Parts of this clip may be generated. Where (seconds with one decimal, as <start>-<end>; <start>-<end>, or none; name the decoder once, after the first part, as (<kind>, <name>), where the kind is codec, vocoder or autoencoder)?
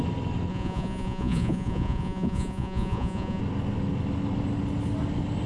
0.5-3.4 (vocoder, Vocos)